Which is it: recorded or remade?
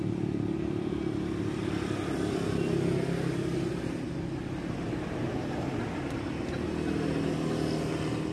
recorded